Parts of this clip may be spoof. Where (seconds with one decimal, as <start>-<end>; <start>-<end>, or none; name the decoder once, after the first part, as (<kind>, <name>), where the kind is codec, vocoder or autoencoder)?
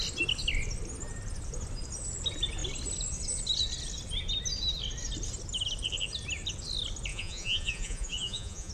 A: 7.1-8.7 (vocoder, Vocos)